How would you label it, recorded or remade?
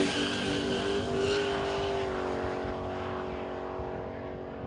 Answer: recorded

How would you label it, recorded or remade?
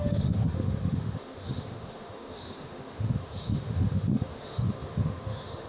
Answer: remade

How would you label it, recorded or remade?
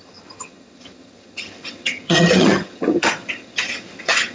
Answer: remade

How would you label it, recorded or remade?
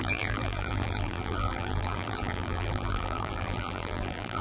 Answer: remade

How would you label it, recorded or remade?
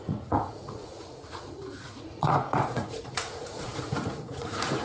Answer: remade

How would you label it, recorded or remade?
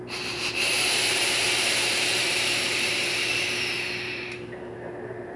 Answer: remade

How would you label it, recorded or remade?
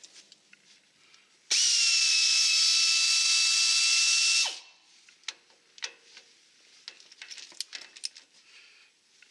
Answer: recorded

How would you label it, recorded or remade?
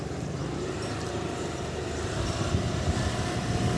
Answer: remade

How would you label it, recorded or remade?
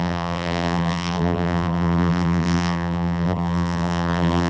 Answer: remade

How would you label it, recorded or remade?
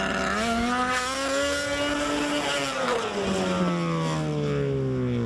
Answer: recorded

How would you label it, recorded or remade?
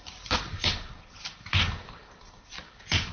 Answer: remade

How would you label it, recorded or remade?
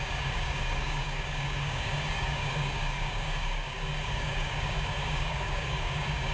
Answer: remade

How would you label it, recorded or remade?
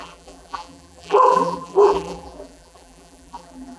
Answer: remade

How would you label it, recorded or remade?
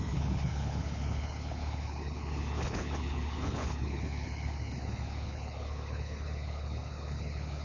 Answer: remade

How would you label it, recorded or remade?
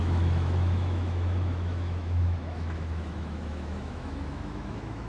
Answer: remade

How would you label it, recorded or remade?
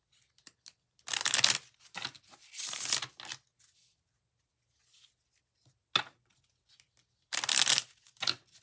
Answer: recorded